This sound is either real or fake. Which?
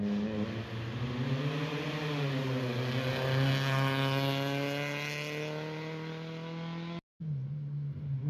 real